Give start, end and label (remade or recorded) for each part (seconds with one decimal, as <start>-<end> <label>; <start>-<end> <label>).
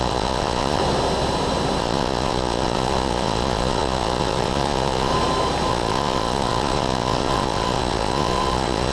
0.0-0.8 remade; 0.8-1.8 recorded; 1.8-5.1 remade; 5.1-5.7 recorded; 5.7-8.9 remade